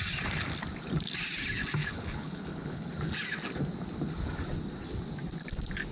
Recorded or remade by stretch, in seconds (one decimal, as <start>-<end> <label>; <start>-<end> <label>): 0.0-1.8 recorded; 1.8-2.9 remade; 2.9-5.9 recorded